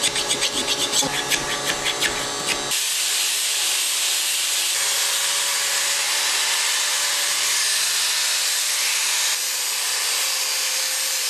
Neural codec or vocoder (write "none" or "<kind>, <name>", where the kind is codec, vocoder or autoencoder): none